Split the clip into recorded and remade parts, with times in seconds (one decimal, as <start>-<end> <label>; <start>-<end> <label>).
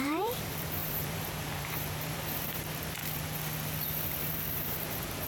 0.0-3.0 remade; 3.0-4.2 recorded; 4.2-5.3 remade